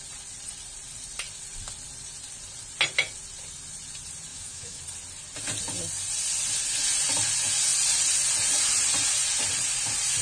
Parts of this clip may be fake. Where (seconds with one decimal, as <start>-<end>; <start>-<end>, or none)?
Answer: 4.3-4.8